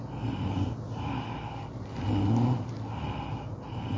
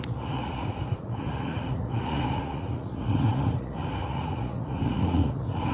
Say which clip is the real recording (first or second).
first